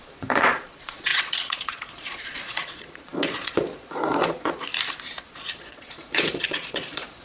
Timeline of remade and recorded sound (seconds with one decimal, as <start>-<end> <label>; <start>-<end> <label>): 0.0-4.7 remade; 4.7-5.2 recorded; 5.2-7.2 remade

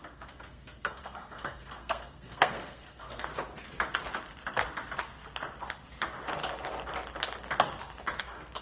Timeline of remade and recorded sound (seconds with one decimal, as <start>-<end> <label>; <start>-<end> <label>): 0.0-3.3 remade; 3.3-8.2 recorded; 8.2-8.6 remade

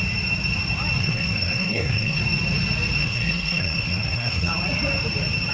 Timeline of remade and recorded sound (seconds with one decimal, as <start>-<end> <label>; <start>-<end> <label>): 0.0-1.0 recorded; 1.0-2.2 remade; 2.2-3.0 recorded; 3.0-4.5 remade; 4.5-5.5 recorded

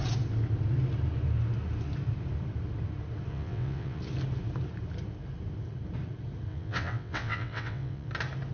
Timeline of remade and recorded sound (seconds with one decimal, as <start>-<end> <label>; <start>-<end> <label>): 0.0-3.3 recorded; 3.3-4.0 remade; 4.0-6.5 recorded; 6.5-8.1 remade; 8.1-8.5 recorded

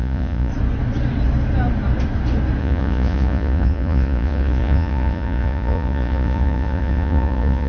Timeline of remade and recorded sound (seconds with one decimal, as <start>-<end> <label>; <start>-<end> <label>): 0.0-0.5 remade; 0.5-2.6 recorded; 2.6-7.7 remade

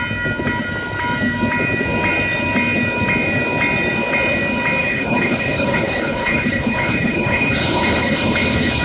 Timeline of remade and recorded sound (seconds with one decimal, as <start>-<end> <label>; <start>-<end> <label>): 0.0-4.8 recorded; 4.8-8.8 remade

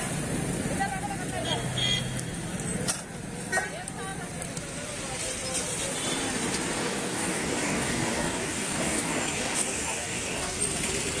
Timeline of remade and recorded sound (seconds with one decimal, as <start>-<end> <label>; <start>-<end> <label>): 0.0-6.8 recorded; 6.8-10.6 remade; 10.6-11.2 recorded